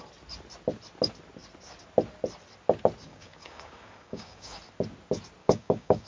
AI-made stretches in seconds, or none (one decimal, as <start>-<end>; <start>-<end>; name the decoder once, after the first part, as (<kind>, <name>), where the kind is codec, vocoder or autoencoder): 3.1-4.6 (codec, DAC); 5.4-6.1